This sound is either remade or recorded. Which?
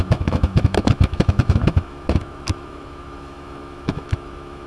remade